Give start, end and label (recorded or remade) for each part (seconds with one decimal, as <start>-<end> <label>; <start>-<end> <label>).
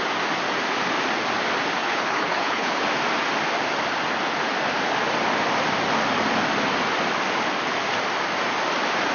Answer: 0.0-1.8 recorded; 1.8-2.8 remade; 2.8-9.1 recorded